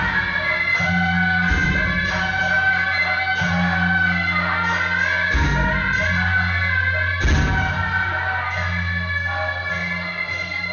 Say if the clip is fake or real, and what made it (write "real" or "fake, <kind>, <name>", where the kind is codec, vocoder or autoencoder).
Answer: real